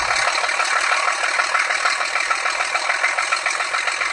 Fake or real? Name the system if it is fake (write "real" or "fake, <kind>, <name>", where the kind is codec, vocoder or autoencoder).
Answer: real